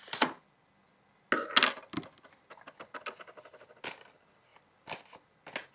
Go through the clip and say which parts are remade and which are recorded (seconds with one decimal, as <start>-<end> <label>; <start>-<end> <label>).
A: 0.0-5.7 recorded